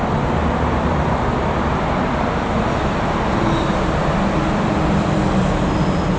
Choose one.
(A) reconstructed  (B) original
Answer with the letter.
A